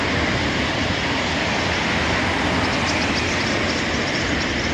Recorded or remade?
recorded